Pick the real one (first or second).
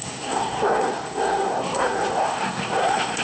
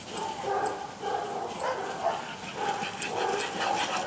second